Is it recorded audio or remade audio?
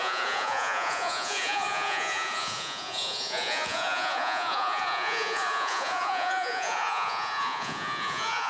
remade